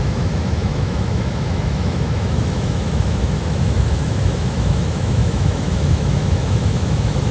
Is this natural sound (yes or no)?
no